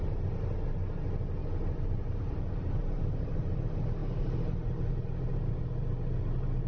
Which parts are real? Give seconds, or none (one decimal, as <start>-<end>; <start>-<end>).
0.0-1.4; 3.6-4.0; 5.6-6.7